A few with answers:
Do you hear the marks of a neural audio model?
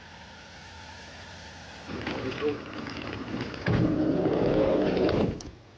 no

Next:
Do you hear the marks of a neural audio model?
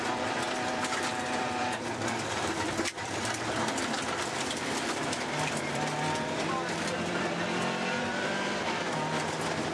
yes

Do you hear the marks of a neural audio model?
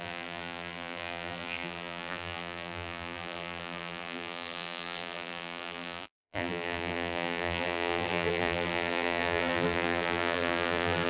yes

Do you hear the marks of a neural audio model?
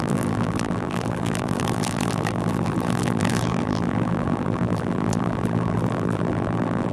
yes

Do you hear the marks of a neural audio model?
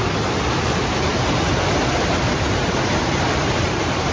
yes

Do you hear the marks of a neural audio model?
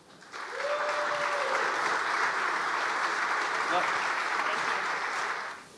yes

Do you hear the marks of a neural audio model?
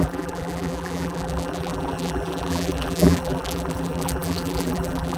yes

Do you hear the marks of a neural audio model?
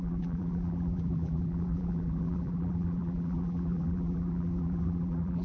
yes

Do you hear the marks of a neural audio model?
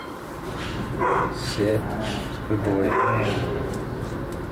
yes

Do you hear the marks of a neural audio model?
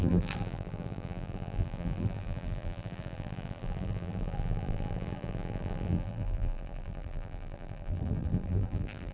yes